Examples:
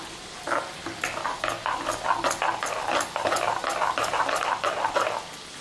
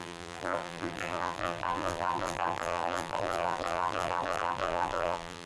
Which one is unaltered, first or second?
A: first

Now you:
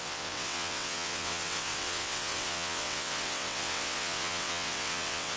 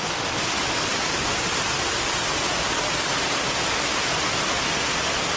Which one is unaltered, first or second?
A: second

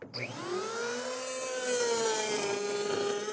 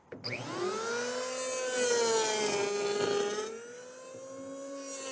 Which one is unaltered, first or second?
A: second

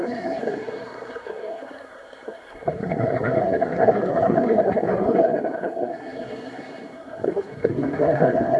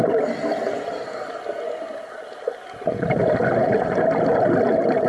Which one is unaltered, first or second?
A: second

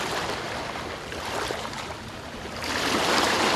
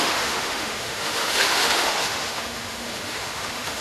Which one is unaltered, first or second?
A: first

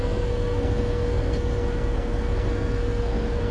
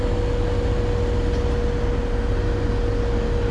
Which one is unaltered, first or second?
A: second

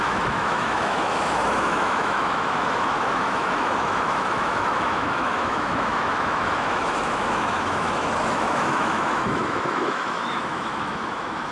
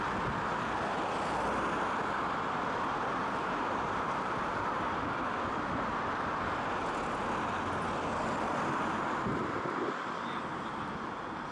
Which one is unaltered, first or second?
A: second